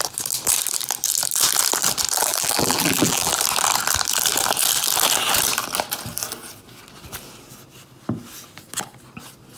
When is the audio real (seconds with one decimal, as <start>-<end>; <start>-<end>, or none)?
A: 0.0-2.2; 3.3-9.6